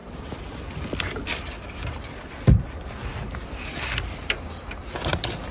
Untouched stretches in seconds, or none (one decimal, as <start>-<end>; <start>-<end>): 0.0-5.5